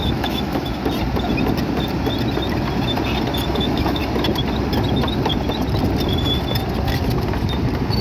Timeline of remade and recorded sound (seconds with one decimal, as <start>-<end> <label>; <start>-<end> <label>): 0.0-0.8 remade; 0.8-3.5 recorded; 3.5-4.0 remade; 4.0-8.0 recorded